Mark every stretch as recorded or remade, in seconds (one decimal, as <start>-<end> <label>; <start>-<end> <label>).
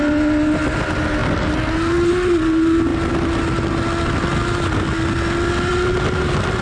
0.0-6.6 recorded